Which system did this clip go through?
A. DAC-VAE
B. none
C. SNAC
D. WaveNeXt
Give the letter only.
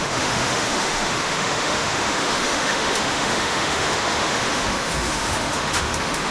A